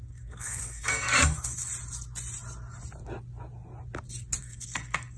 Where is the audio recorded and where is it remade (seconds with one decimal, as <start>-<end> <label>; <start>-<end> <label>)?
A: 0.0-1.7 remade; 1.7-4.4 recorded; 4.4-5.2 remade